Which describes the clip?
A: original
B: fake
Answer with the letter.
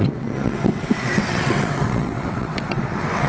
B